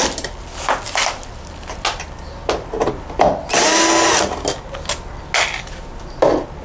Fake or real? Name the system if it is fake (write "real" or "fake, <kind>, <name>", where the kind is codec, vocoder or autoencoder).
real